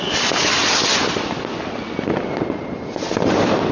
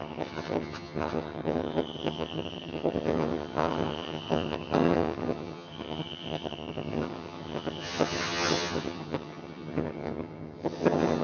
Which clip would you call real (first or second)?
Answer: first